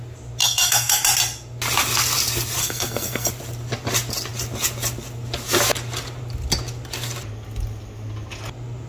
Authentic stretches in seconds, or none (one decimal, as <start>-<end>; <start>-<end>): 0.0-0.4; 1.0-2.6; 3.3-8.9